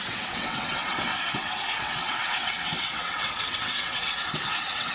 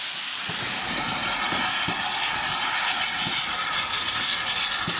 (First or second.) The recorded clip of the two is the second